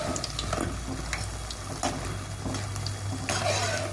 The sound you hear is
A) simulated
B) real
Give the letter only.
B